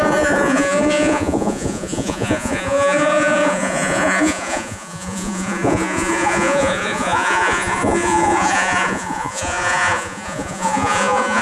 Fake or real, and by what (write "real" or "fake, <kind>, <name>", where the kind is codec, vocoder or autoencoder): fake, vocoder, Vocos